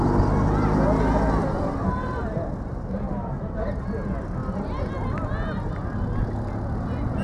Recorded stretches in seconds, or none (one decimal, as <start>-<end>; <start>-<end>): 0.0-7.2

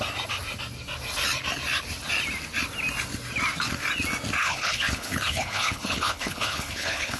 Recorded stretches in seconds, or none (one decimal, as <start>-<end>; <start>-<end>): 0.0-4.4

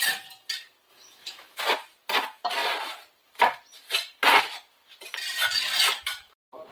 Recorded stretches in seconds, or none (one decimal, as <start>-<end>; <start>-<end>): 0.0-0.9; 1.6-6.7

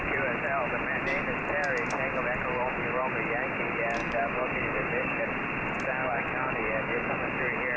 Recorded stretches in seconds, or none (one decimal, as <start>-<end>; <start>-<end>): 0.0-4.0; 5.2-6.0; 7.3-7.8

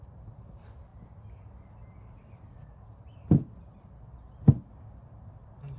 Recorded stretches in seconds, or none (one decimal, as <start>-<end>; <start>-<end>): 0.0-5.8

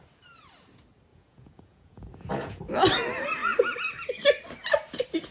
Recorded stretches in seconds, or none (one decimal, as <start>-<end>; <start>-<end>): 0.0-1.1; 2.6-5.3

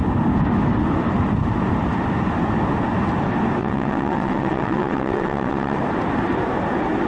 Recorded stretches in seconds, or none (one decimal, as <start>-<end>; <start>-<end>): 0.0-3.6; 5.8-7.1